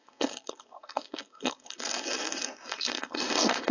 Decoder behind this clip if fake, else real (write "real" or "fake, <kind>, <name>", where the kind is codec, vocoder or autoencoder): fake, codec, SNAC